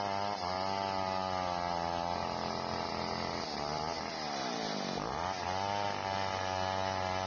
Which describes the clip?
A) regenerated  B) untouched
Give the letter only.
B